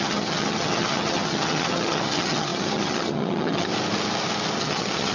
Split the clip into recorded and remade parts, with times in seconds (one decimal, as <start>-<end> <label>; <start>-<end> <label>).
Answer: 0.0-3.7 remade; 3.7-4.6 recorded; 4.6-5.1 remade